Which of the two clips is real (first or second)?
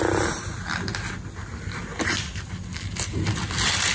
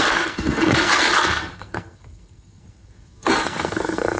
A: first